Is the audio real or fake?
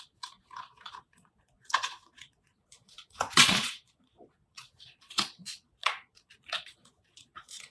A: fake